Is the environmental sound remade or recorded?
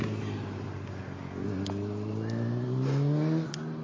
recorded